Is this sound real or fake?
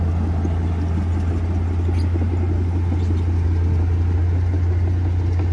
real